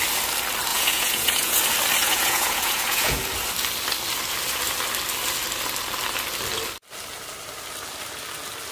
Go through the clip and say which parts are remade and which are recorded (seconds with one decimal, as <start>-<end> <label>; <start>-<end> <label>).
0.0-0.7 recorded; 0.7-1.6 remade; 1.6-2.0 recorded; 2.0-3.2 remade; 3.2-8.7 recorded